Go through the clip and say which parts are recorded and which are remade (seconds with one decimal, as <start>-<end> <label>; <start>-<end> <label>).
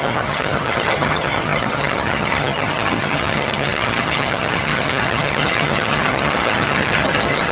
0.0-7.5 remade